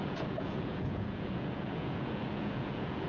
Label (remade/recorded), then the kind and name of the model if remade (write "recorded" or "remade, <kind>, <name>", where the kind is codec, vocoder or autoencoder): remade, vocoder, Vocos